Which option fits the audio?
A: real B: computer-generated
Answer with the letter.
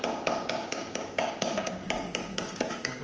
B